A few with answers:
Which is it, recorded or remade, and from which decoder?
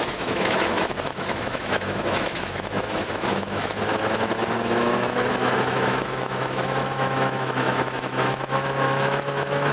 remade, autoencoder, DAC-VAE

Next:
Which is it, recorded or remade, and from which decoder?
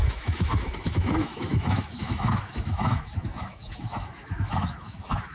remade, autoencoder, DAC-VAE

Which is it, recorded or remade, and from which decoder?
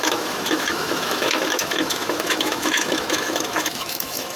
remade, autoencoder, DAC-VAE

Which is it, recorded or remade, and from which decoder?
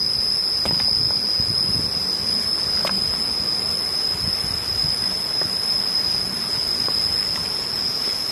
recorded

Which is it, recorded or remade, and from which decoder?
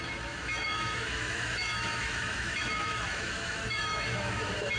remade, autoencoder, DAC-VAE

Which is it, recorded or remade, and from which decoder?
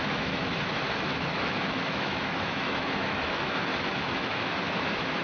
remade, autoencoder, DAC-VAE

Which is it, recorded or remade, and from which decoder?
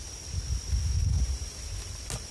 recorded